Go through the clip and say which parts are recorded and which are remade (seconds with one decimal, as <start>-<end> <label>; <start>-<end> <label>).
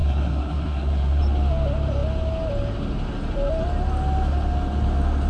0.0-1.2 remade; 1.2-5.3 recorded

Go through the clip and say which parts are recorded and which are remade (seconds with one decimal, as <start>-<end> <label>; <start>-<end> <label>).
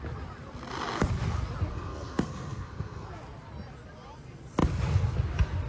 0.0-1.7 recorded; 1.7-3.1 remade; 3.1-5.7 recorded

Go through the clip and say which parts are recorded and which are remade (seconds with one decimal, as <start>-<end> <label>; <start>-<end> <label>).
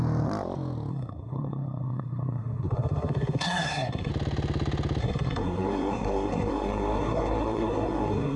0.0-0.9 recorded; 0.9-4.1 remade; 4.1-5.0 recorded; 5.0-8.4 remade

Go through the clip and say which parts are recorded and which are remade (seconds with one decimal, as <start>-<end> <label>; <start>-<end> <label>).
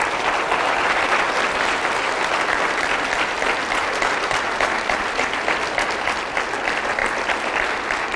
0.0-8.2 recorded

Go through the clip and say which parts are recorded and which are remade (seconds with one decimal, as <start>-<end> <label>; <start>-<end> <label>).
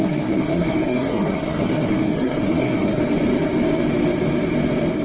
0.0-3.0 remade; 3.0-5.0 recorded